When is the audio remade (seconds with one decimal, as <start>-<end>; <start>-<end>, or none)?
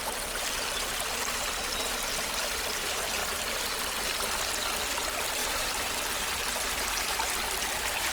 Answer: 5.4-6.4